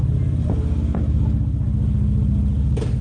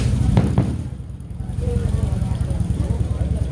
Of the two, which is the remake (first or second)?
second